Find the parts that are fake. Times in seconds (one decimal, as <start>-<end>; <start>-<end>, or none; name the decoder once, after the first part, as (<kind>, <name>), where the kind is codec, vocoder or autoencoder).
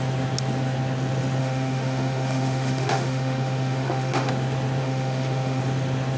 1.4-4.3 (autoencoder, DAC-VAE); 4.8-5.6